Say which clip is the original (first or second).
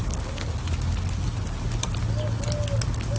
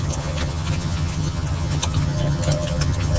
first